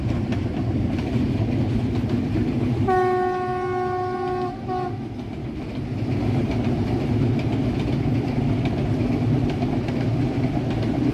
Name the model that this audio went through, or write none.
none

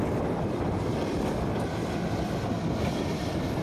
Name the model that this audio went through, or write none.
vocoder, BigVGAN v2